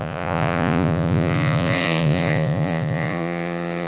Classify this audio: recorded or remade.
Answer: remade